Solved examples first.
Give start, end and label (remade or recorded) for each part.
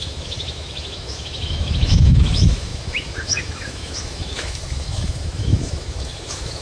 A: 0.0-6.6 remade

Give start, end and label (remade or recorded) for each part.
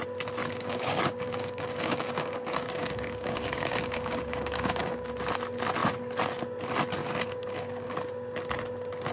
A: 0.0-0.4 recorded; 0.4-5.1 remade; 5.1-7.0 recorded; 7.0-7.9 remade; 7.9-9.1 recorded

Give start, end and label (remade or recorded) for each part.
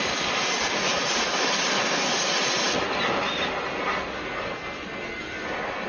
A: 0.0-5.9 recorded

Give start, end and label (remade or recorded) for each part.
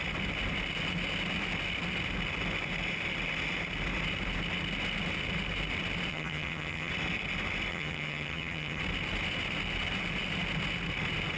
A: 0.0-6.1 recorded; 6.1-6.9 remade; 6.9-7.7 recorded; 7.7-8.8 remade; 8.8-11.4 recorded